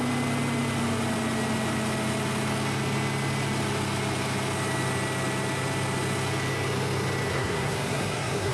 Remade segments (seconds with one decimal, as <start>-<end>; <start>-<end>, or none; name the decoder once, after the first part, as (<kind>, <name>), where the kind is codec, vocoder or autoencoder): 7.3-8.5 (codec, SNAC)